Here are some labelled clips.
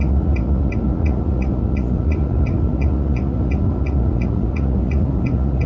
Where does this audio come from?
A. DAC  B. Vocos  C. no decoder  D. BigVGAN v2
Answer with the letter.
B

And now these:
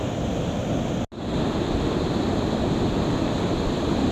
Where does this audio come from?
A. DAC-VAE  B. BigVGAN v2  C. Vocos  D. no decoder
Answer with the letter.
D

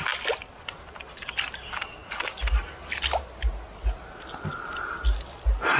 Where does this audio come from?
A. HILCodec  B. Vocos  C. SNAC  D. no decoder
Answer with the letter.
D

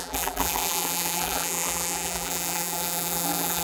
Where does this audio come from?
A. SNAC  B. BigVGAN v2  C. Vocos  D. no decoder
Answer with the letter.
B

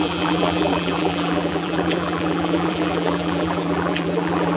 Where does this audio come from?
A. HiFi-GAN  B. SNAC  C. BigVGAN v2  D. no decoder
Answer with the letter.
C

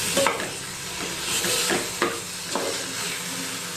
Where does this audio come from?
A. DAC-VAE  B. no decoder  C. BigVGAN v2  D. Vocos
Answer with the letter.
B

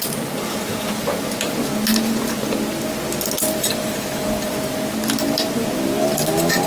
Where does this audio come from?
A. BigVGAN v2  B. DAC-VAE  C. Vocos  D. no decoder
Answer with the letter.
D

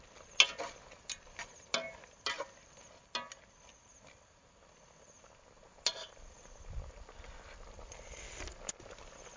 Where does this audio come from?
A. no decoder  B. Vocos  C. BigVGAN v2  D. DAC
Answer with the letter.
A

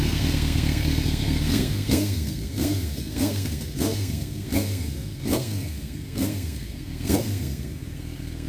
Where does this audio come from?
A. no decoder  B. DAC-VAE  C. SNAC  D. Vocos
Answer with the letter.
C